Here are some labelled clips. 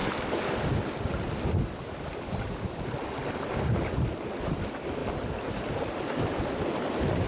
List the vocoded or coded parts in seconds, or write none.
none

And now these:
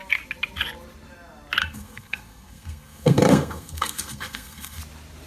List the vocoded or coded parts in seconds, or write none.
1.6-4.8 (codec, SNAC)

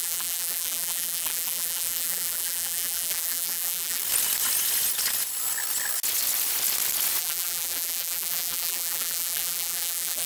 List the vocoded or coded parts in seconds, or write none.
0.0-4.0 (vocoder, BigVGAN v2); 7.2-10.3

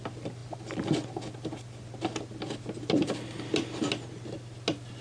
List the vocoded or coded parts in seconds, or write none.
none

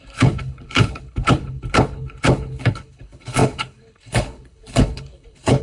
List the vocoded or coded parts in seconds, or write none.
0.0-5.6 (codec, HILCodec)

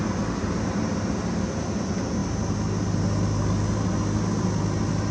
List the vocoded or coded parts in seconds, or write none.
none